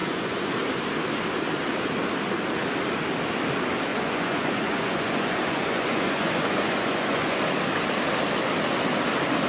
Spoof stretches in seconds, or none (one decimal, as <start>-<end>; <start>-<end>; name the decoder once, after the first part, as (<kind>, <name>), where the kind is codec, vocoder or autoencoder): 0.0-0.5 (vocoder, Vocos); 3.9-7.4